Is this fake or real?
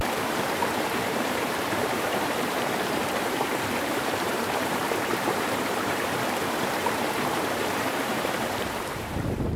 fake